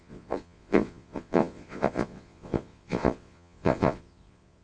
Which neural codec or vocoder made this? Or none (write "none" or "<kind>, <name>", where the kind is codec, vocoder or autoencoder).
vocoder, Vocos